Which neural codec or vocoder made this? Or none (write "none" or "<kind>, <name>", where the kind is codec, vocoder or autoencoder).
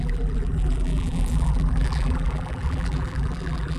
vocoder, BigVGAN v2